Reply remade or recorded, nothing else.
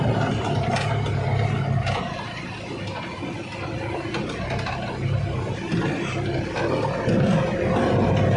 recorded